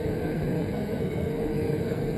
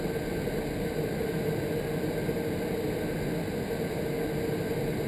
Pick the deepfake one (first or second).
first